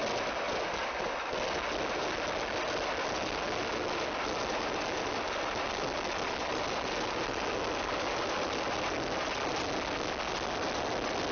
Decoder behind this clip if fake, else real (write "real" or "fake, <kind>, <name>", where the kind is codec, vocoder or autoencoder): real